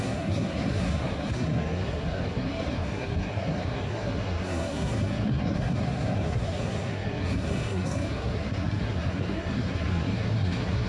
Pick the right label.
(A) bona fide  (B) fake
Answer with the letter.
B